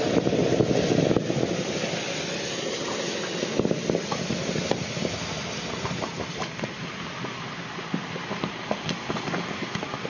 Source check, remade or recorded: recorded